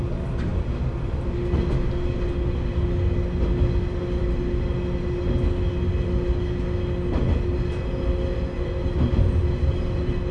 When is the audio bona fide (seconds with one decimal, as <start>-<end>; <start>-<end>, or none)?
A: 0.0-10.3